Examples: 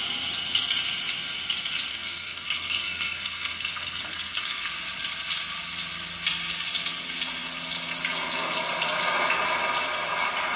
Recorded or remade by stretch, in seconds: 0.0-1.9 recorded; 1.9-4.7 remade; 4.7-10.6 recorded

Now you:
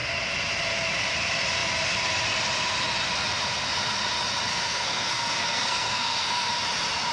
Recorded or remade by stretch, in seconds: 0.0-4.5 recorded; 4.5-6.6 remade; 6.6-7.1 recorded

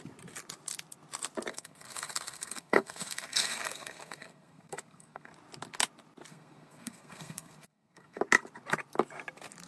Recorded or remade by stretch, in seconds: 0.0-1.5 recorded; 1.5-5.3 remade; 5.3-6.3 recorded; 6.3-8.2 remade; 8.2-9.7 recorded